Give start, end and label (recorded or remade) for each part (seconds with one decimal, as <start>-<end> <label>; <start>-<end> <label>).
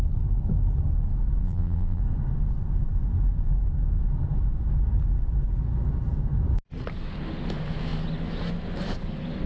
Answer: 0.0-1.4 recorded; 1.4-2.0 remade; 2.0-9.5 recorded